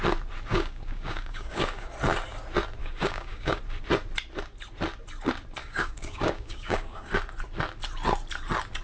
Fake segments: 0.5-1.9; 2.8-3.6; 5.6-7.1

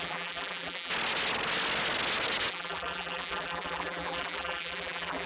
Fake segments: 0.0-0.9; 2.5-5.3

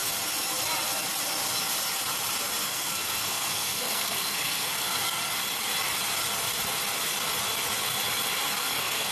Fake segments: 2.6-5.2; 8.6-9.1

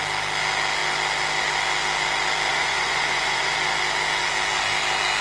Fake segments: 2.5-3.5

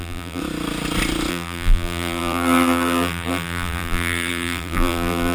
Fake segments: 0.0-0.4; 1.3-5.3